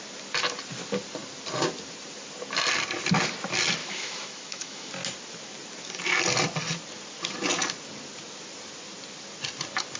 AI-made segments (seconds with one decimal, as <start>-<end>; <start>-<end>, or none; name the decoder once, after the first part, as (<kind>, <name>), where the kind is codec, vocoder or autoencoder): 3.8-4.9 (autoencoder, DAC-VAE)